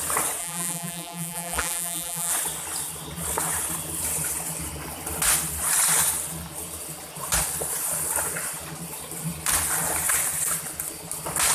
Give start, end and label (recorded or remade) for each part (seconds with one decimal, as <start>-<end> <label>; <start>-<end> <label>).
0.0-0.4 recorded; 0.4-2.3 remade; 2.3-11.5 recorded